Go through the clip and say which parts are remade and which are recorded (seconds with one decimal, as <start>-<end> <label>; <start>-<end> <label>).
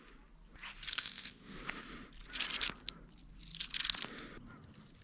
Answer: 0.0-0.9 recorded; 0.9-1.6 remade; 1.6-5.0 recorded